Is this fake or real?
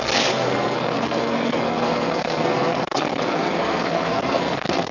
fake